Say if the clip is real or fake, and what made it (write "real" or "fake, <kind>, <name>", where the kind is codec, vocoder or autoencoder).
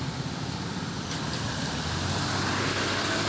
real